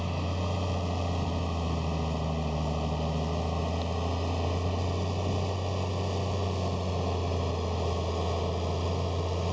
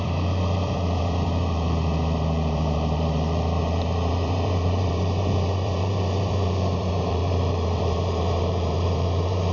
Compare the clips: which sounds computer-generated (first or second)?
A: second